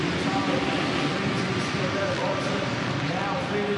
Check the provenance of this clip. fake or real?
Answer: real